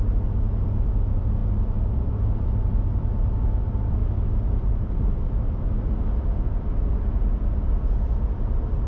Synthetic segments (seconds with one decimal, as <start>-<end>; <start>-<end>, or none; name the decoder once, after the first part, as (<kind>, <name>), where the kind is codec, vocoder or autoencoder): 0.0-1.4 (vocoder, BigVGAN v2); 1.9-4.0; 6.3-8.9